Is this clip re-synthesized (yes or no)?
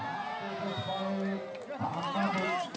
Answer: no